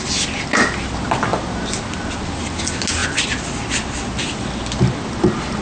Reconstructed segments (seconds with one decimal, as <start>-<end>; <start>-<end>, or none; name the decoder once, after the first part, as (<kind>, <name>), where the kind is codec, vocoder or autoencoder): none